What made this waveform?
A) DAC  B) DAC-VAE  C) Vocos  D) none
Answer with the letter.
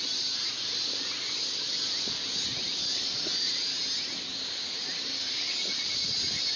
D